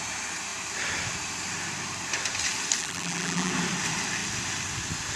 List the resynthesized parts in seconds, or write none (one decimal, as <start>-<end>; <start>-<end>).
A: 2.8-3.5